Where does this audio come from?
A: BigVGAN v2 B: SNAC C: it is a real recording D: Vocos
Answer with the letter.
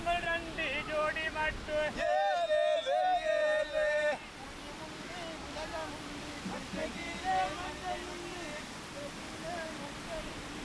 C